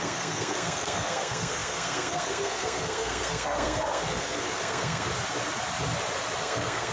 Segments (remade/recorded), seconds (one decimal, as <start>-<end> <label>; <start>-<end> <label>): 0.0-5.1 remade; 5.1-6.4 recorded; 6.4-6.9 remade